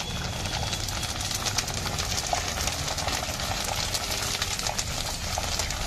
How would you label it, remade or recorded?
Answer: recorded